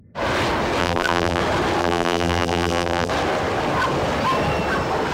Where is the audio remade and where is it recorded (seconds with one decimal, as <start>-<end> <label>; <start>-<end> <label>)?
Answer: 0.0-0.8 recorded; 0.8-1.4 remade; 1.4-1.8 recorded; 1.8-3.1 remade; 3.1-5.1 recorded